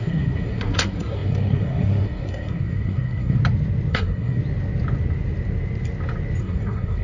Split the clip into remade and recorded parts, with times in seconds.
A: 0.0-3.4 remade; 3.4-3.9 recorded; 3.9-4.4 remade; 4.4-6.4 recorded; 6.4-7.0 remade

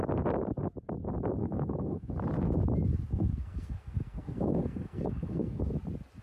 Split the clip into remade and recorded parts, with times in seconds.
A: 0.0-1.4 recorded; 1.4-2.1 remade; 2.1-3.1 recorded; 3.1-5.7 remade; 5.7-6.2 recorded

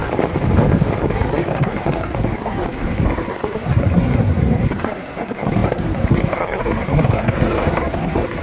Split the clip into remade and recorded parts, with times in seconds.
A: 0.0-1.0 recorded; 1.0-8.4 remade

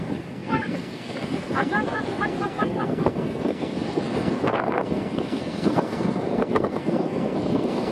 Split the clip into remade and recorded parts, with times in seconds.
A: 0.0-7.9 remade

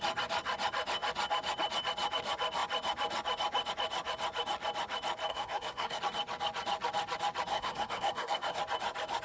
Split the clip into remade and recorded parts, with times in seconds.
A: 0.0-5.3 recorded; 5.3-6.0 remade; 6.0-7.5 recorded; 7.5-8.6 remade; 8.6-9.2 recorded